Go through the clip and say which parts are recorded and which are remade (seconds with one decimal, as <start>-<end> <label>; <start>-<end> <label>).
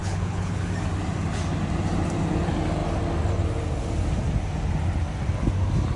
0.0-0.6 remade; 0.6-6.0 recorded